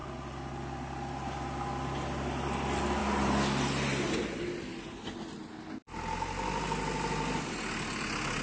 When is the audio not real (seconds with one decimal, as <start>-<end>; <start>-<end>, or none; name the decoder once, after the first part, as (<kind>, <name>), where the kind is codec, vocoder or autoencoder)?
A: none